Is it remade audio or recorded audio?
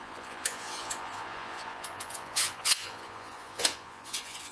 remade